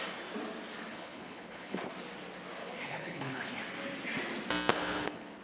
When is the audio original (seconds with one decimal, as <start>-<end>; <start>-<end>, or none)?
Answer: 0.0-0.9; 1.9-2.6; 3.5-4.7